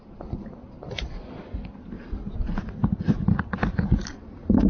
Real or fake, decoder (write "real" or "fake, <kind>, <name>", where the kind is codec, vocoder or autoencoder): real